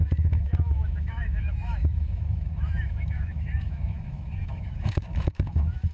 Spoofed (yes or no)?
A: yes